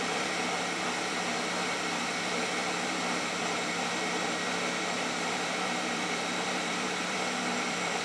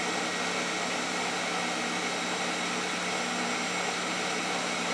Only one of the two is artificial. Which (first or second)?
first